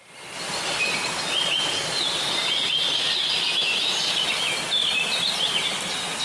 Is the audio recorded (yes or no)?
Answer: yes